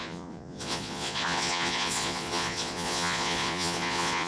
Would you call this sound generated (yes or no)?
yes